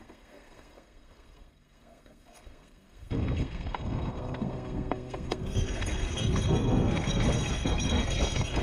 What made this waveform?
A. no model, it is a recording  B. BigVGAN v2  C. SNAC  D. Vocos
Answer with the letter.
C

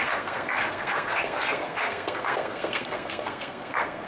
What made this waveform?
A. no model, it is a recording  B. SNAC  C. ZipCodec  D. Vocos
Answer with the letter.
B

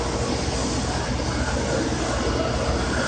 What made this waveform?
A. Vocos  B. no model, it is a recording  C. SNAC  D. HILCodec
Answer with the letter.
B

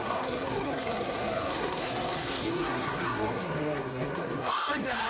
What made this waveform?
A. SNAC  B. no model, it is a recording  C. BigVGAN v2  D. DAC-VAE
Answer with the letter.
A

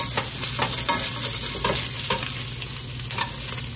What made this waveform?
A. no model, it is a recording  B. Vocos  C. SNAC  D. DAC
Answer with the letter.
A